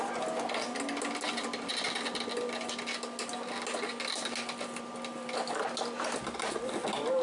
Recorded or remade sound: recorded